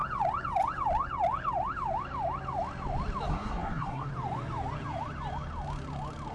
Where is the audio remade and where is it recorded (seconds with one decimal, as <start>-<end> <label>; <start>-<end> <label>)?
0.0-3.3 recorded; 3.3-4.1 remade; 4.1-6.3 recorded